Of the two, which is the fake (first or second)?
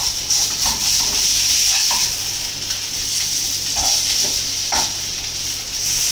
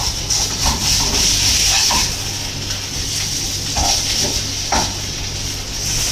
first